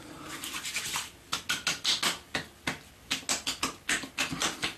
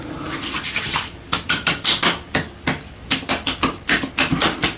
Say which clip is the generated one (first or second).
second